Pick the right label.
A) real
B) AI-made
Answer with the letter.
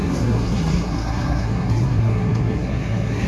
B